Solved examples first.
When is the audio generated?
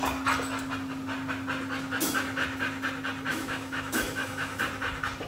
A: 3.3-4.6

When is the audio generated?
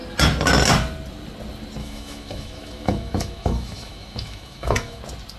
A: 1.8-5.0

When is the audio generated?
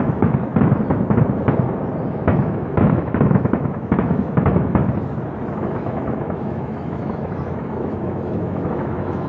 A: 0.0-0.5; 2.1-4.8; 5.5-9.3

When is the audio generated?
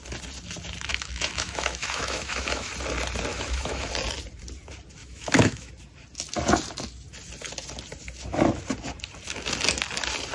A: 0.9-2.7; 3.3-3.9; 5.0-5.7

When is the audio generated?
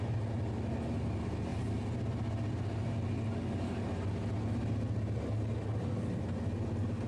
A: none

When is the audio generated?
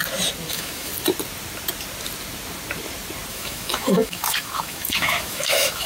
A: 0.5-0.9; 3.3-5.9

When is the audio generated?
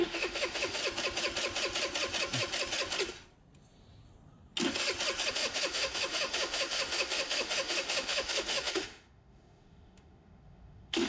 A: 0.0-0.8; 5.3-11.1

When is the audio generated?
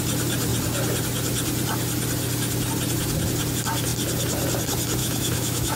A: 5.0-5.8